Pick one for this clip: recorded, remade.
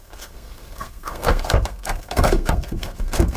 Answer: remade